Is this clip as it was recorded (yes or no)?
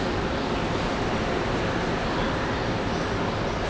yes